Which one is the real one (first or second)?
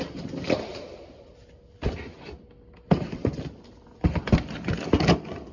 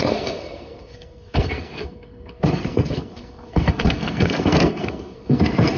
first